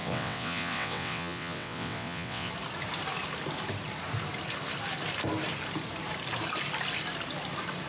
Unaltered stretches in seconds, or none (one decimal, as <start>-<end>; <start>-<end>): 2.5-7.9